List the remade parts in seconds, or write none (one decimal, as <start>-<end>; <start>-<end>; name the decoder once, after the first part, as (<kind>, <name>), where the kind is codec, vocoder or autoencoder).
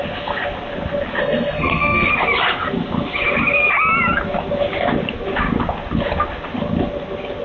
1.2-2.1 (codec, SNAC)